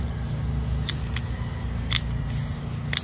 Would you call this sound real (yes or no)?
yes